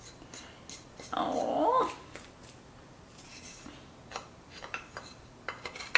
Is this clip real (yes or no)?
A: yes